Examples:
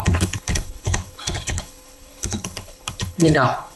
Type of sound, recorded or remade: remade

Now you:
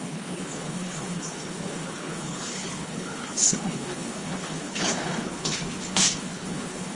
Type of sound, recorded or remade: remade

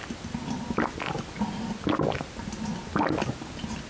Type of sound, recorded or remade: recorded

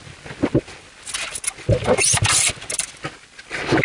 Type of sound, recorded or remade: recorded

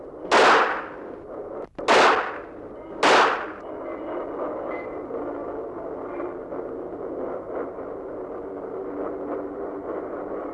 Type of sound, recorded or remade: recorded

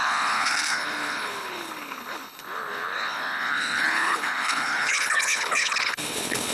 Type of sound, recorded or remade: remade